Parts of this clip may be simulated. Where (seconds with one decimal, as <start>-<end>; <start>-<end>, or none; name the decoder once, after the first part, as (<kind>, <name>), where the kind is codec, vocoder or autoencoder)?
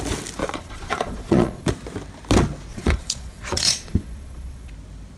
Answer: 0.4-1.7 (vocoder, Vocos); 2.7-4.7